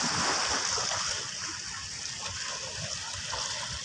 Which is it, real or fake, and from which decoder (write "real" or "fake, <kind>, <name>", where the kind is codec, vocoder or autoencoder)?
real